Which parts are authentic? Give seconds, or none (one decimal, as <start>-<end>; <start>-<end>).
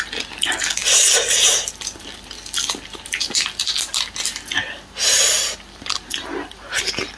0.0-7.2